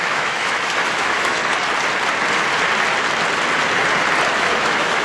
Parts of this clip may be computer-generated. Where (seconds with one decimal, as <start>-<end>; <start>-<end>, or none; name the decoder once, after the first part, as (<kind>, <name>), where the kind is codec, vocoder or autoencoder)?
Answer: 0.0-1.4 (autoencoder, DAC-VAE); 4.4-5.0